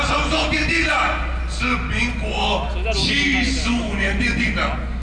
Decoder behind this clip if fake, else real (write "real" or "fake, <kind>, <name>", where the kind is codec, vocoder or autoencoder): real